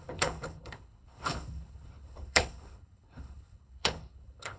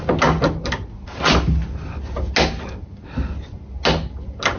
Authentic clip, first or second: second